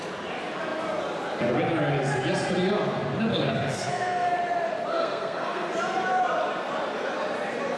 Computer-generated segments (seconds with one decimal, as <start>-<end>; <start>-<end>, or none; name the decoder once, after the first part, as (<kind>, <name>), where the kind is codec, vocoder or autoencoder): 3.3-4.4 (codec, SNAC); 4.9-5.7